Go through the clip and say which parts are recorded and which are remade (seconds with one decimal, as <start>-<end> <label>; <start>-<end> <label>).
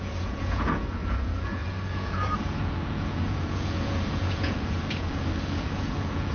0.0-6.3 remade